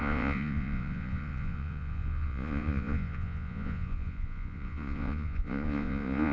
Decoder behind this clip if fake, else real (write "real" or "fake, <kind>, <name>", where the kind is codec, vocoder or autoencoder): fake, vocoder, Vocos